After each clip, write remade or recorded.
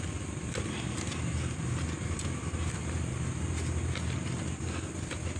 recorded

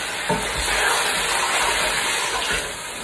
recorded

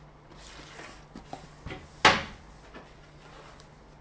recorded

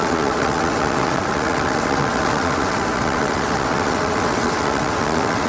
remade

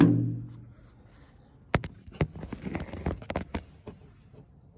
recorded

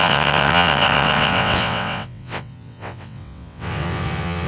remade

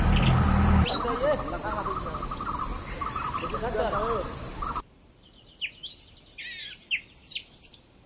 recorded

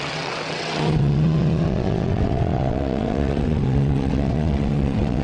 remade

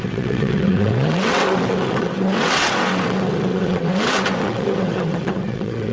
remade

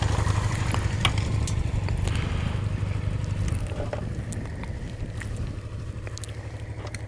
recorded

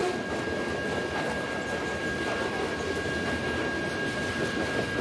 recorded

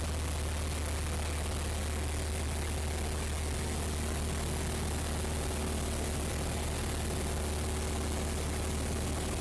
recorded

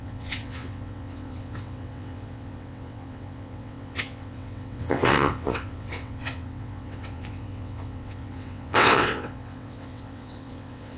remade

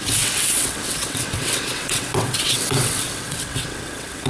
remade